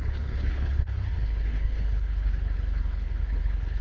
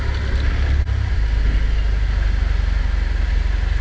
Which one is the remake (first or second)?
first